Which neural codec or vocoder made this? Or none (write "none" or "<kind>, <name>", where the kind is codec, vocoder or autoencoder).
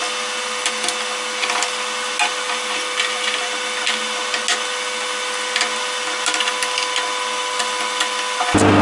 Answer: none